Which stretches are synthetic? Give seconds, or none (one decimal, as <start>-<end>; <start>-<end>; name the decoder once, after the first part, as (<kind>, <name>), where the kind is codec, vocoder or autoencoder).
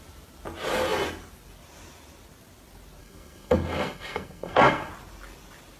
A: 3.0-4.9 (codec, SNAC)